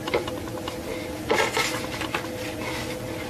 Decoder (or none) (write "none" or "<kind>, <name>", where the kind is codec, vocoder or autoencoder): none